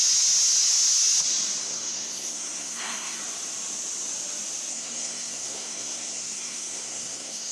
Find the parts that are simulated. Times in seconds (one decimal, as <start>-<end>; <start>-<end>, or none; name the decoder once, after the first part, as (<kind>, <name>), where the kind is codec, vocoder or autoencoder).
1.6-3.2 (codec, SNAC); 4.7-7.5